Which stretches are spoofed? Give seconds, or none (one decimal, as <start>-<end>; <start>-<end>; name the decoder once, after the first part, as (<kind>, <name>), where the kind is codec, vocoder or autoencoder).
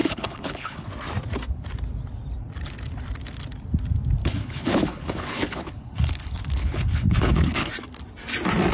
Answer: 0.0-0.9 (codec, HILCodec); 4.2-7.7